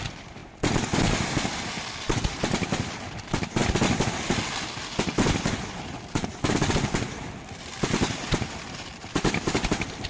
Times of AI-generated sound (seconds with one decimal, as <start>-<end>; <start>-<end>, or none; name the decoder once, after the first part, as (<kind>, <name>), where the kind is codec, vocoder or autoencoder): 0.0-0.4 (vocoder, BigVGAN v2); 1.5-3.6; 5.4-10.1